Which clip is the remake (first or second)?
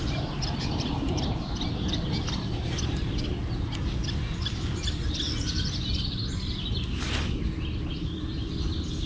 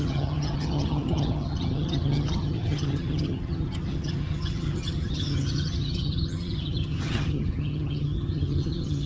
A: second